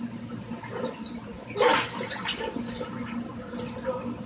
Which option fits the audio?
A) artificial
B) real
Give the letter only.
B